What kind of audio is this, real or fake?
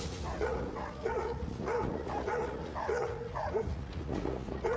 fake